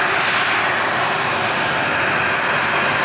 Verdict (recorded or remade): recorded